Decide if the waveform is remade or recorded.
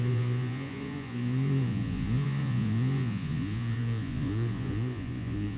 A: remade